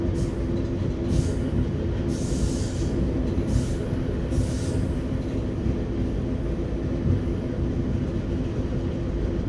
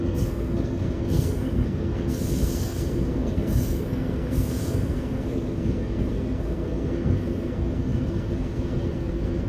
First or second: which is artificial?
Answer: second